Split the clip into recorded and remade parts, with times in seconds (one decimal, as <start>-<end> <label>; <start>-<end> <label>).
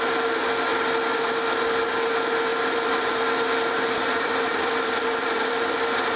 0.0-2.5 recorded; 2.5-6.2 remade